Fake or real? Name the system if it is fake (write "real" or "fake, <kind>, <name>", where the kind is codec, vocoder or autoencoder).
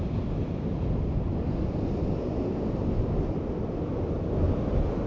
real